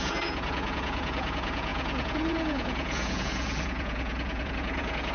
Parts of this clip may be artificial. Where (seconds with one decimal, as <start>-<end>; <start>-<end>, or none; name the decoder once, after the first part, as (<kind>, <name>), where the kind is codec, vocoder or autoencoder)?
0.0-5.1 (vocoder, Vocos)